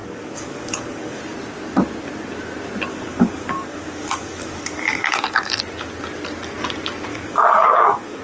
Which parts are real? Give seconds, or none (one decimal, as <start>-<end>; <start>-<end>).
1.2-2.9; 5.5-7.1

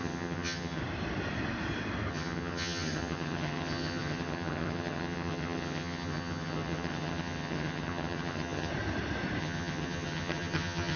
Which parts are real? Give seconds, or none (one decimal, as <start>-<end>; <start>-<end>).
0.8-2.1; 8.7-9.4

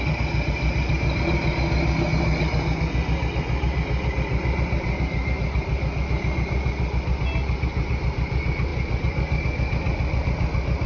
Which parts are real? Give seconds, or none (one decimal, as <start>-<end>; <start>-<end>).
0.0-10.9

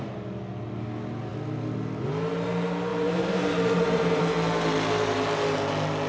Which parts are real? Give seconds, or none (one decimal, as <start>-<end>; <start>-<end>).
0.0-2.9; 4.2-6.1

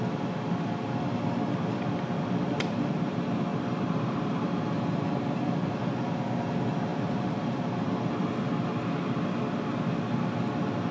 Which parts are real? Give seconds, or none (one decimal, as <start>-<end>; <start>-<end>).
0.0-3.5; 5.7-6.9; 8.1-10.9

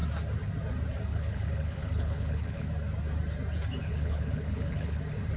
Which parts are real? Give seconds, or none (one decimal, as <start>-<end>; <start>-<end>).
0.0-1.1; 2.7-3.8; 5.0-5.4

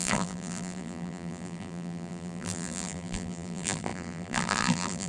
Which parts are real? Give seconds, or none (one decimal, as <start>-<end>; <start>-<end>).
none